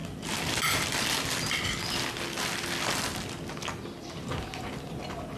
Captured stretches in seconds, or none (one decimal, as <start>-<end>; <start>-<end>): 0.0-5.4